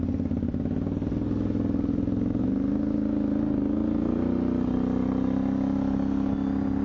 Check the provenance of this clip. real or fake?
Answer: real